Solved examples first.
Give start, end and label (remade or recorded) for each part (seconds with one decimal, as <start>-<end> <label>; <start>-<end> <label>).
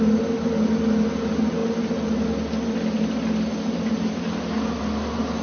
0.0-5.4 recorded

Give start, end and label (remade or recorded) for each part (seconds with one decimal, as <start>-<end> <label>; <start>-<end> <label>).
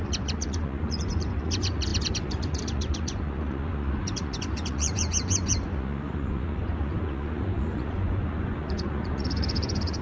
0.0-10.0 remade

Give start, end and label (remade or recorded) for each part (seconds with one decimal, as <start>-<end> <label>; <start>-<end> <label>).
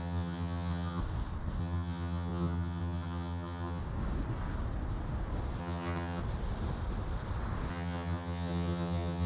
0.0-1.0 remade; 1.0-1.6 recorded; 1.6-3.8 remade; 3.8-5.6 recorded; 5.6-6.2 remade; 6.2-7.7 recorded; 7.7-9.3 remade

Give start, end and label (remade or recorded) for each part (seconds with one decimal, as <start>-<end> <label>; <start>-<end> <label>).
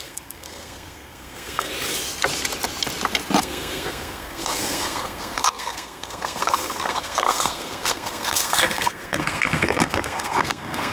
0.0-1.7 remade; 1.7-3.4 recorded; 3.4-10.9 remade